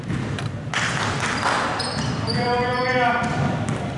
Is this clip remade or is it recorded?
recorded